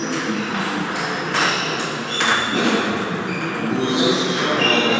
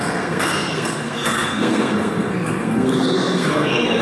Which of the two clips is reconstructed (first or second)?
second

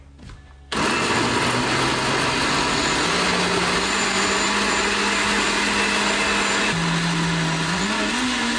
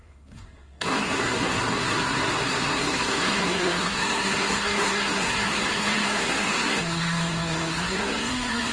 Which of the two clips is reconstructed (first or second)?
second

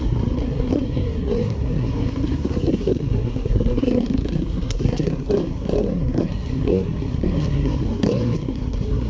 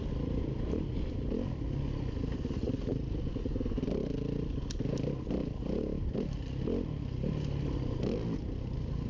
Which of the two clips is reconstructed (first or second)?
first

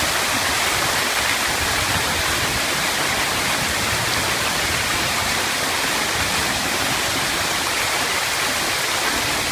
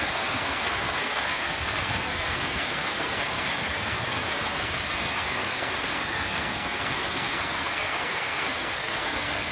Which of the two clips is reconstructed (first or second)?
second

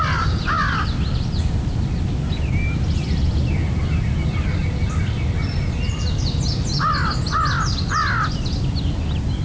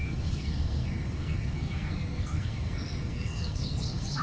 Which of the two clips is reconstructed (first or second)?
second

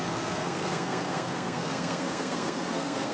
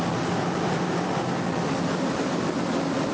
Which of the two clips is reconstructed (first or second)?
first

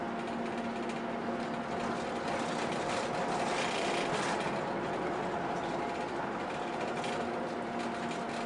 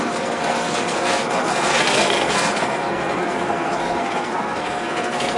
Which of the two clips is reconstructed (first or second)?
second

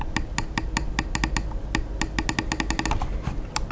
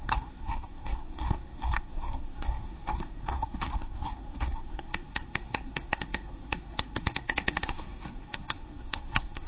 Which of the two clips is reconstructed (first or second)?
second